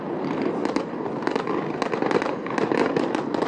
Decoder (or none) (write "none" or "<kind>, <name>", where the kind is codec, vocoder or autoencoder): none